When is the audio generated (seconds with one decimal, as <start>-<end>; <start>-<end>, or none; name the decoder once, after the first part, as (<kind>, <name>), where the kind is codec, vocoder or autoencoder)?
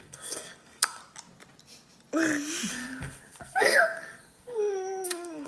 0.0-1.0 (codec, SNAC); 2.7-5.5